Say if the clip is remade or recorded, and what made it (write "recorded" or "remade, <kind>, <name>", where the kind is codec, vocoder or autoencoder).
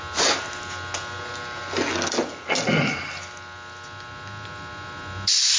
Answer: recorded